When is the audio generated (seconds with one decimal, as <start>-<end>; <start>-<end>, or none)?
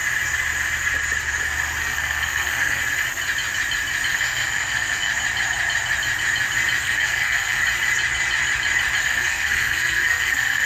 1.8-2.8; 4.1-5.1; 6.8-7.6; 9.0-10.7